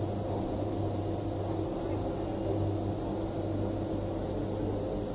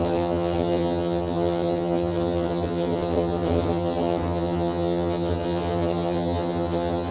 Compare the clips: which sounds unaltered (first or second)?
first